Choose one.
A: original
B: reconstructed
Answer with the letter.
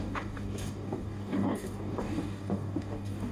B